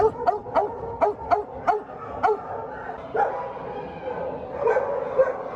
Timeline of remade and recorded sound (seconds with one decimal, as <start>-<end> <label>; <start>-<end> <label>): 0.0-5.6 recorded